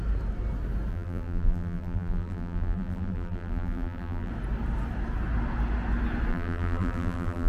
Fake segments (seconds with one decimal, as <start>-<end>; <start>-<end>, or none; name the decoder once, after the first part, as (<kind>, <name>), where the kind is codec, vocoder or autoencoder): 0.9-4.3 (vocoder, BigVGAN v2); 6.3-7.5